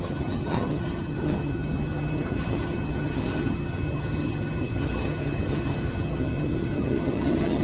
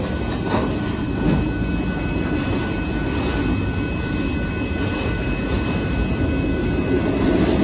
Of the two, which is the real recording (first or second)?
second